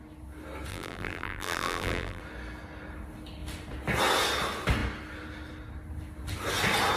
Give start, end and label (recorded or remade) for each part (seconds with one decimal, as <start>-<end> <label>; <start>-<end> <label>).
0.0-0.7 recorded; 0.7-2.2 remade; 2.2-7.0 recorded